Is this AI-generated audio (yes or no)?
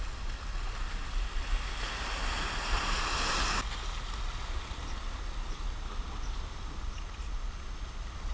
no